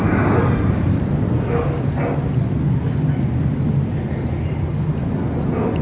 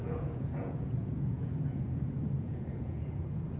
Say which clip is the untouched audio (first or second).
first